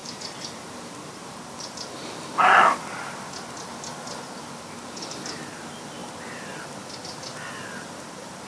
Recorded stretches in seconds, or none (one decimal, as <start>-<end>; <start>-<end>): 0.9-8.5